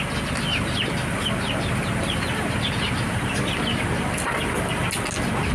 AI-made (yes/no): no